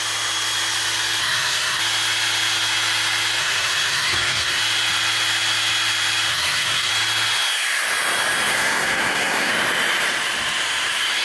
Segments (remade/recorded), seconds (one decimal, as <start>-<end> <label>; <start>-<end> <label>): 0.0-1.2 recorded; 1.2-1.8 remade; 1.8-3.4 recorded; 3.4-4.6 remade; 4.6-6.3 recorded; 6.3-6.9 remade; 6.9-8.5 recorded; 8.5-9.5 remade; 9.5-11.2 recorded